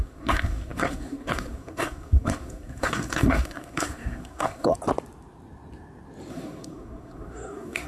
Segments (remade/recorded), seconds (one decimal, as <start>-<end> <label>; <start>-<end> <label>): 0.0-4.7 remade; 4.7-6.3 recorded; 6.3-7.9 remade